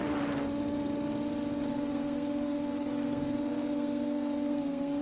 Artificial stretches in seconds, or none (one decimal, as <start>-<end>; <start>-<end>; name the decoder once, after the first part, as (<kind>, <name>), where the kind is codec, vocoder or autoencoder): 1.7-5.0 (codec, SNAC)